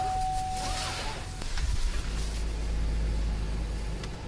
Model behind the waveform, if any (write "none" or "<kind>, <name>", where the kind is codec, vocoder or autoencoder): none